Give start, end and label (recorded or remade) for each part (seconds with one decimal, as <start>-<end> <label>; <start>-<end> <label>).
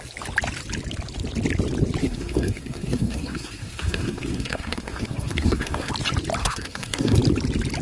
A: 0.0-2.0 recorded; 2.0-5.9 remade; 5.9-6.4 recorded; 6.4-7.2 remade; 7.2-7.8 recorded